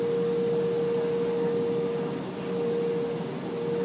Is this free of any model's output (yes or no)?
yes